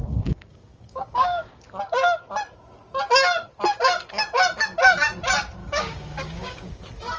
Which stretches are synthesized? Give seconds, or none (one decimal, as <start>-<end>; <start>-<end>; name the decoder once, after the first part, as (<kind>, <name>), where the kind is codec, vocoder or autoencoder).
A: 0.0-1.5 (codec, DAC); 5.6-6.8